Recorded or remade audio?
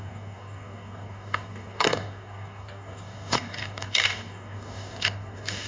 remade